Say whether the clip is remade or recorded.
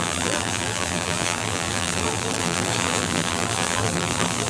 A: remade